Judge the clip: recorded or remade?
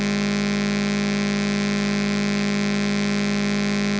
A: recorded